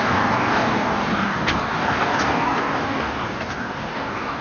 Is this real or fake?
fake